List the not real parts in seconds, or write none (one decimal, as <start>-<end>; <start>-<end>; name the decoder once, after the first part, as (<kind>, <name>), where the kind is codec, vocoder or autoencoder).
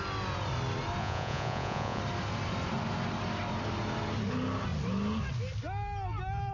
1.0-2.0 (vocoder, Vocos)